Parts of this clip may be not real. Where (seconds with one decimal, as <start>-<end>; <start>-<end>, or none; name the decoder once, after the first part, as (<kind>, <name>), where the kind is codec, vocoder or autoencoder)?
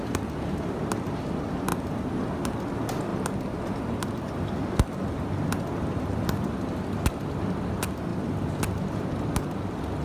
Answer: none